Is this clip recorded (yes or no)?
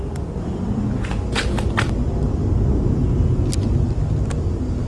yes